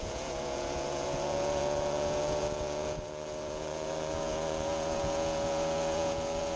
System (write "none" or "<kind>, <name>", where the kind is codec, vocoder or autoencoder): vocoder, Vocos